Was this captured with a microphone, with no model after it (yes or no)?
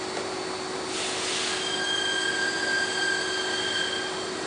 yes